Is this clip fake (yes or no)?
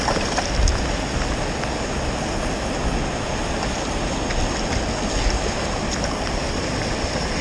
no